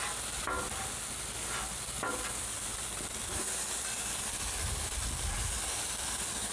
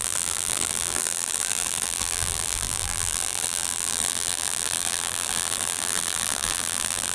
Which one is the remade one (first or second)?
second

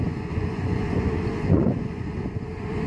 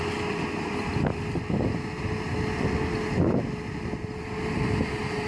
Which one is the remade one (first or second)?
first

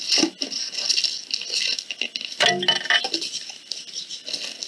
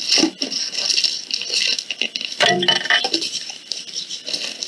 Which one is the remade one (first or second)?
second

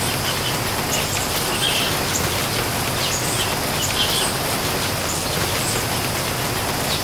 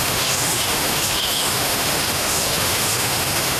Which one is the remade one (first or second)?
second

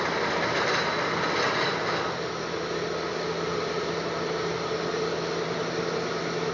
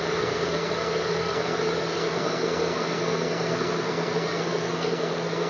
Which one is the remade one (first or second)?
second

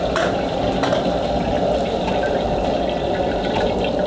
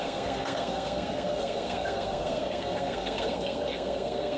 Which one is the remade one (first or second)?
second